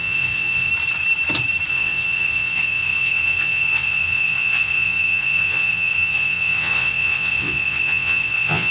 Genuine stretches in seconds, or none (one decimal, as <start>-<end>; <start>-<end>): 0.7-1.7